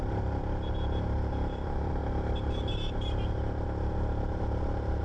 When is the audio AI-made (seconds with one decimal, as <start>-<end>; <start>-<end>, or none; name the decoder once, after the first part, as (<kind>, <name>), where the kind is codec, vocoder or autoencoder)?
0.0-2.0 (vocoder, BigVGAN v2)